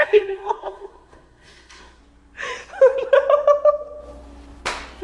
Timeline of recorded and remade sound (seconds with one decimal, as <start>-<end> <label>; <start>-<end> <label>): 0.0-2.0 remade; 2.0-5.0 recorded